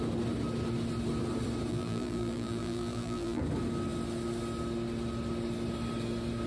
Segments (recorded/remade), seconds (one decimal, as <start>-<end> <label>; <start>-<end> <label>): 0.0-1.7 recorded; 1.7-3.4 remade; 3.4-6.5 recorded